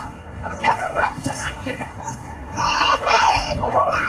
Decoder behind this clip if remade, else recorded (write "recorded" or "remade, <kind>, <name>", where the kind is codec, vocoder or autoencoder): remade, codec, SNAC